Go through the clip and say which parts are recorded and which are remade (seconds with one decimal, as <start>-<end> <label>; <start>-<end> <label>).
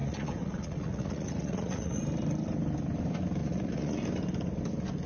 0.0-2.0 remade; 2.0-3.4 recorded; 3.4-4.0 remade; 4.0-5.1 recorded